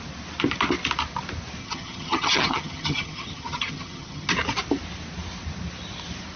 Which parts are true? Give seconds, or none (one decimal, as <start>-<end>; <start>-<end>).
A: 0.0-1.6; 4.3-6.4